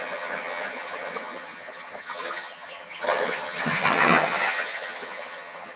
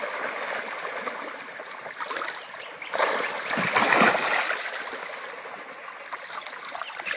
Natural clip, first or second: second